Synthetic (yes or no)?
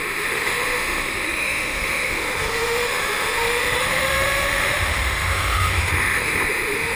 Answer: yes